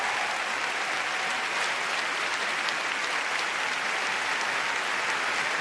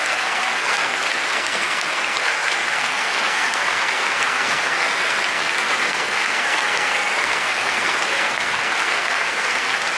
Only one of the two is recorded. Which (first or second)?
first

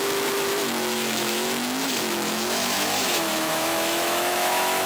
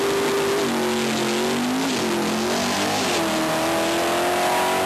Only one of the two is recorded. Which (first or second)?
second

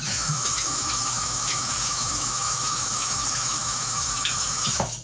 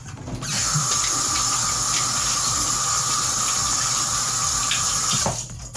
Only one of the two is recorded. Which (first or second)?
second